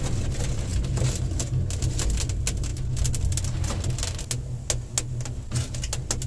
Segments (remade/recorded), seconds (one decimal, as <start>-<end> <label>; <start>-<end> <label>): 0.0-6.3 recorded